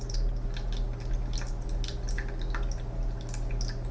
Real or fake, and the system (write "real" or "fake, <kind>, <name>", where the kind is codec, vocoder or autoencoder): real